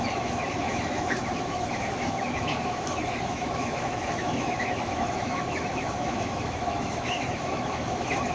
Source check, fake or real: fake